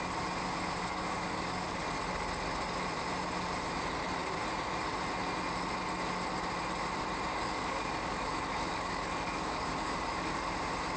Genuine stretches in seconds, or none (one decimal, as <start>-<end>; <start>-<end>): 0.0-0.9; 1.8-7.3; 10.5-11.0